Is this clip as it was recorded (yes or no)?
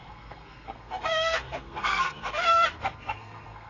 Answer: no